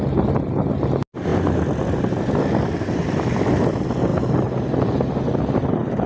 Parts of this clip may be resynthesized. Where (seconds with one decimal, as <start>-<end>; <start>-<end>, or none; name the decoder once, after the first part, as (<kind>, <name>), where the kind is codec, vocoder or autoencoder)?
none